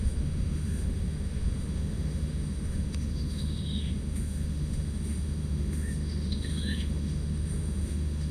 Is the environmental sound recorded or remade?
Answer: remade